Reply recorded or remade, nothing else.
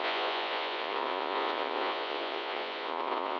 remade